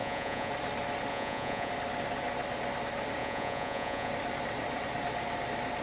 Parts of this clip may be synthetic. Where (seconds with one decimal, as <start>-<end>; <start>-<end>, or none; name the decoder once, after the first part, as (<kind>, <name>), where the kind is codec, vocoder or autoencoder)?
0.0-0.5 (vocoder, Vocos); 1.1-1.7; 3.2-4.1